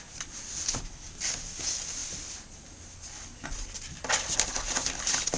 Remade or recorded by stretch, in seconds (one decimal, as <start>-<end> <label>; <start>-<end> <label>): 0.0-5.4 recorded

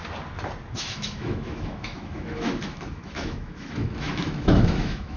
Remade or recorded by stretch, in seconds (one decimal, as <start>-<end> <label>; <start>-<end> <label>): 0.0-0.7 recorded; 0.7-5.2 remade

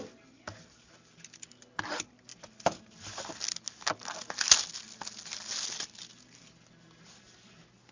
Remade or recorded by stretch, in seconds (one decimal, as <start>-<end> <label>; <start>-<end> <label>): 0.0-7.9 recorded

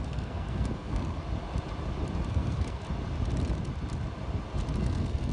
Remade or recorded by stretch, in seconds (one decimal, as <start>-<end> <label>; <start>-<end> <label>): 0.0-1.2 remade; 1.2-2.3 recorded; 2.3-2.8 remade; 2.8-4.8 recorded; 4.8-5.3 remade

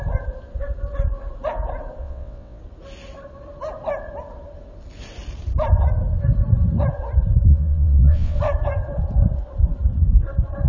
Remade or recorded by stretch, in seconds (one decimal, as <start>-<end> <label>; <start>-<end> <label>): 0.0-2.0 recorded; 2.0-2.6 remade; 2.6-7.5 recorded; 7.5-8.4 remade; 8.4-10.7 recorded